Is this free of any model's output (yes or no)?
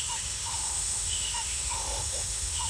no